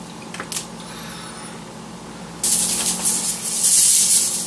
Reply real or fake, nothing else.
real